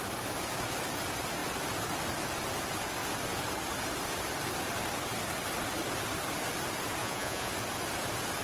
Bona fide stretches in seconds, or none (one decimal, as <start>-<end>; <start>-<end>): 0.0-7.0; 7.5-8.4